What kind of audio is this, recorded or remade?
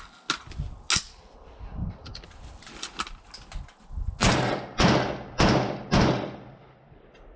recorded